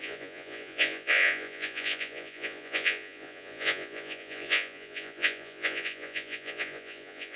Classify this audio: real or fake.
fake